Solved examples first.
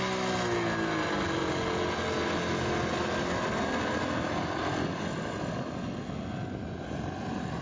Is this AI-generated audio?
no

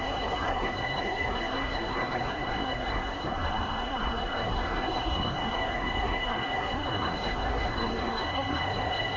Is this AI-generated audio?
yes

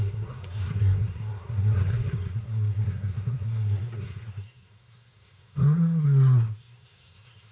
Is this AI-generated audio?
yes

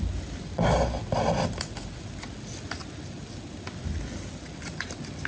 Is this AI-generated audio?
no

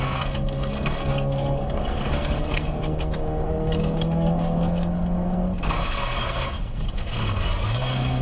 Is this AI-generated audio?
yes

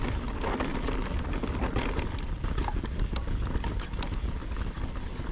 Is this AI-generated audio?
no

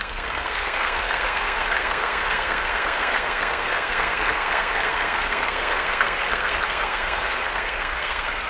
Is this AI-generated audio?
yes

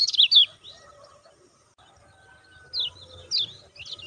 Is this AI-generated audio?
no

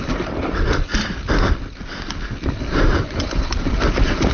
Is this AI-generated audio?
no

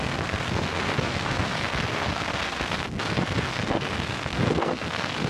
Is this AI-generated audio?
yes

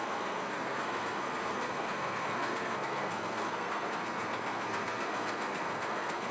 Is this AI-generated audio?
yes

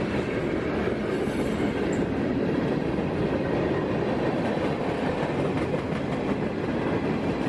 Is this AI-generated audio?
no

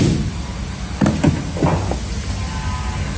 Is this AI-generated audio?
no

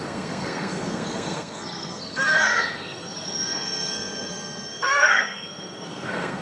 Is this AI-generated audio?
yes